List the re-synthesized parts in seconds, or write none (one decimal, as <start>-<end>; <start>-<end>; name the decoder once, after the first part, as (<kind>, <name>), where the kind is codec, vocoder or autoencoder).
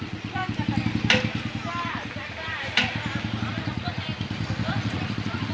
0.0-0.4 (vocoder, Vocos); 3.5-4.1; 4.7-5.5